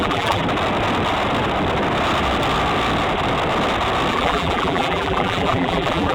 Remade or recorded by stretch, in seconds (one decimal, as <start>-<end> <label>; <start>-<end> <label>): 0.0-0.4 remade; 0.4-4.1 recorded; 4.1-6.1 remade